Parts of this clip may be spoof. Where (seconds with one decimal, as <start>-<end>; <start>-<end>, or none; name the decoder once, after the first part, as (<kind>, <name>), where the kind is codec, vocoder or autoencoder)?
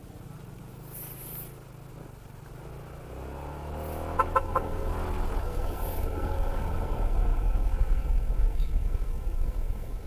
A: 4.4-4.9 (codec, SNAC); 5.4-10.1